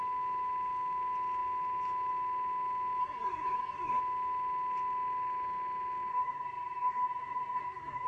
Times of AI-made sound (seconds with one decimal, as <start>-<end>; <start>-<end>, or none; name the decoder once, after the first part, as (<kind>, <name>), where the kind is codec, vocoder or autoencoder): 3.0-4.0 (codec, SNAC); 6.1-8.1